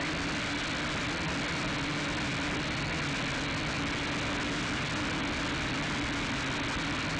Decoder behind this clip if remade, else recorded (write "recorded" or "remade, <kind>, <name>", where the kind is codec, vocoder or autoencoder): recorded